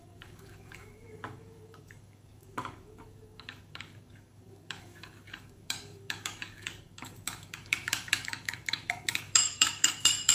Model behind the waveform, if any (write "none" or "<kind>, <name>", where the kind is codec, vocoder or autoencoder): codec, DAC